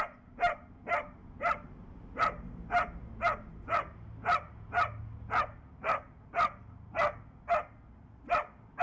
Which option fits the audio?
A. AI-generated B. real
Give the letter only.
B